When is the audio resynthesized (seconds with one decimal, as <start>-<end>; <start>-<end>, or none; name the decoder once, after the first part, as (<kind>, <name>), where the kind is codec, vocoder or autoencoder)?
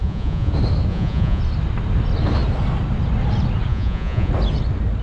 0.0-0.5 (vocoder, Vocos); 0.9-1.4; 3.7-4.3